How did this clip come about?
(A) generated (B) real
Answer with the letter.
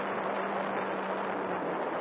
B